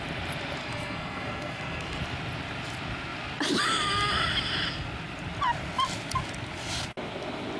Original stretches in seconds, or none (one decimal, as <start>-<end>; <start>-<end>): 0.0-0.6; 2.0-7.6